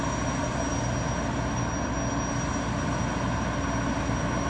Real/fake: real